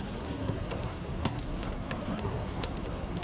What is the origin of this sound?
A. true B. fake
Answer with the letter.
B